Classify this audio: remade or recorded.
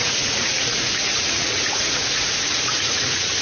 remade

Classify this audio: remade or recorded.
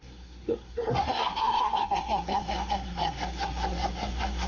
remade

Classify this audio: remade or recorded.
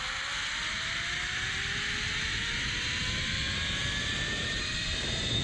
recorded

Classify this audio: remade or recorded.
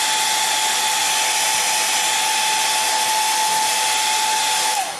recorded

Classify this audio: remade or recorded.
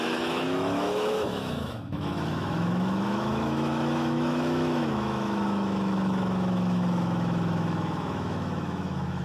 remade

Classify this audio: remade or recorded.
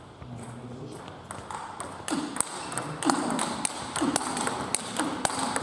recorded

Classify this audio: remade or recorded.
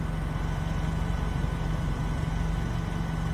recorded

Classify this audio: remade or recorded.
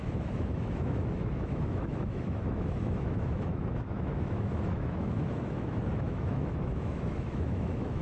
remade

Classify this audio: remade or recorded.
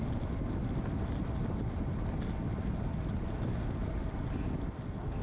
recorded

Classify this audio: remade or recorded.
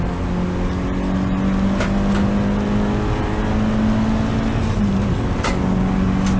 recorded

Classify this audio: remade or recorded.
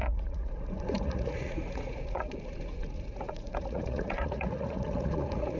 remade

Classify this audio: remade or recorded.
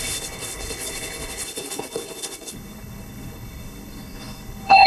remade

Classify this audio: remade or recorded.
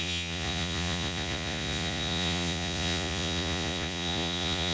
remade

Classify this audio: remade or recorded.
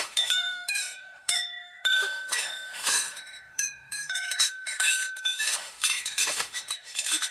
remade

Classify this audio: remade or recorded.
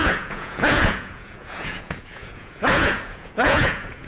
remade